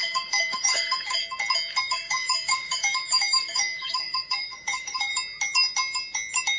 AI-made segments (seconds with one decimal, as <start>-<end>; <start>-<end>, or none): 0.0-1.2; 1.8-5.1